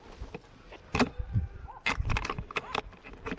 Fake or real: real